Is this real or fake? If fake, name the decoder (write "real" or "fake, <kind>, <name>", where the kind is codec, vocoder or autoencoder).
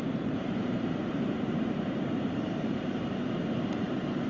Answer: fake, vocoder, BigVGAN v2